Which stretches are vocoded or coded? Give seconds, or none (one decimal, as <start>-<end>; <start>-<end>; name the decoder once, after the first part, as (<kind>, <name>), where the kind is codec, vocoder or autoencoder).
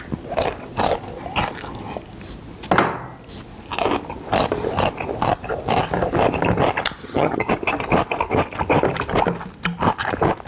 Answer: 7.0-7.5 (vocoder, HiFi-GAN)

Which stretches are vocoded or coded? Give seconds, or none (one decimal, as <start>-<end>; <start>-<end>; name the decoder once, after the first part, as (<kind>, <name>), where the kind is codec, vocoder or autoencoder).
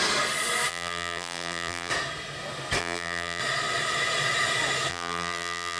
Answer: 0.7-1.9 (vocoder, BigVGAN v2); 2.8-3.4; 4.9-5.8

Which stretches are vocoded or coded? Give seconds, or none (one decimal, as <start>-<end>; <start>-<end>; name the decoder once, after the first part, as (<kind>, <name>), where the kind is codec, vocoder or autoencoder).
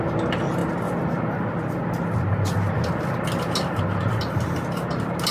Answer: none